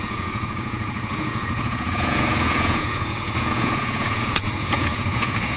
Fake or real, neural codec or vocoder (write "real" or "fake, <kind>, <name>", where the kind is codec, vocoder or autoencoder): fake, vocoder, Vocos